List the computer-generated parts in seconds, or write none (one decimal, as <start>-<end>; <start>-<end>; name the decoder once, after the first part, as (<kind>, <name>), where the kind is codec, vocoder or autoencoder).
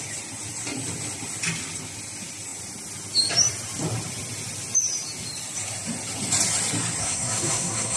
7.0-8.0 (codec, SNAC)